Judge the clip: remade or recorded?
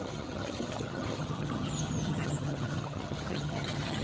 remade